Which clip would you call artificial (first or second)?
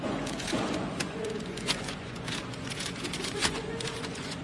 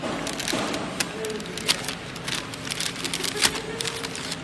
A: first